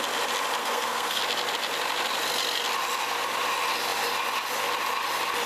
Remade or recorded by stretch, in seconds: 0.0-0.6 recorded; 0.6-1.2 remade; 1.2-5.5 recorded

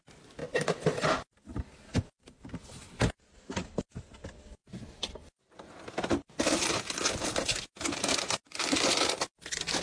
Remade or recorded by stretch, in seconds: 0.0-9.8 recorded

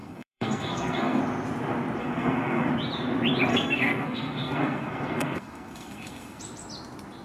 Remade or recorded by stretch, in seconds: 0.0-1.2 remade; 1.2-2.0 recorded; 2.0-2.7 remade; 2.7-3.5 recorded; 3.5-6.4 remade; 6.4-7.2 recorded

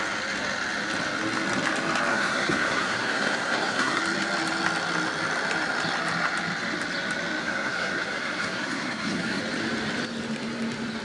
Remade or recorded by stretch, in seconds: 0.0-2.1 recorded; 2.1-4.0 remade; 4.0-7.4 recorded; 7.4-9.4 remade; 9.4-11.0 recorded

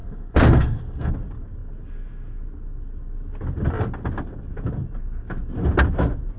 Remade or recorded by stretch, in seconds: 0.0-1.1 remade; 1.1-6.4 recorded